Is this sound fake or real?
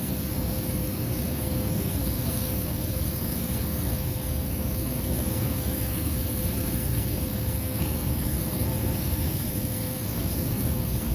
fake